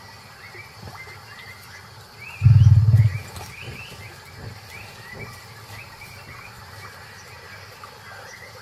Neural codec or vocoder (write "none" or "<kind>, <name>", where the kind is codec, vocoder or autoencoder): none